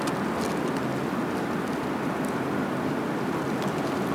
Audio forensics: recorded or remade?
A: recorded